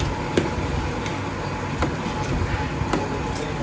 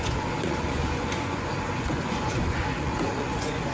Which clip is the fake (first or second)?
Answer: second